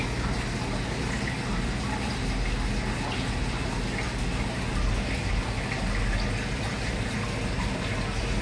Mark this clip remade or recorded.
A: recorded